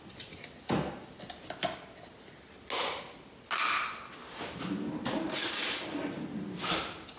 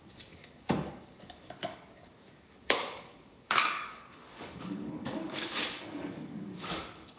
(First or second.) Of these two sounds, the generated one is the second